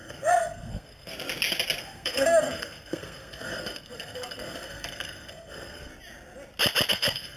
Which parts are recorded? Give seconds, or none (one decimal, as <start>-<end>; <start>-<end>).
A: 1.1-1.8; 5.9-6.9